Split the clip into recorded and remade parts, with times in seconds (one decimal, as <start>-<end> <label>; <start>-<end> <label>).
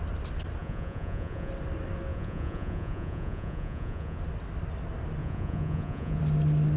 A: 0.0-0.6 recorded; 0.6-1.5 remade; 1.5-2.1 recorded; 2.1-4.2 remade; 4.2-5.2 recorded; 5.2-6.2 remade; 6.2-6.8 recorded